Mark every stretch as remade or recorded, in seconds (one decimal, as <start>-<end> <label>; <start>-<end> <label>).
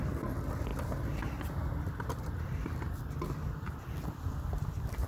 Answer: 0.0-5.1 recorded